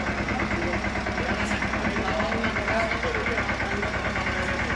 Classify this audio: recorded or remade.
recorded